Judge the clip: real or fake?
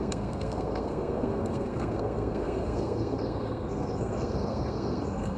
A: fake